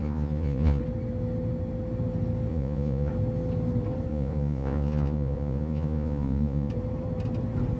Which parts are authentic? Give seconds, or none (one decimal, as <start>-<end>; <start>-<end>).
0.8-2.5; 3.1-4.1; 6.7-7.8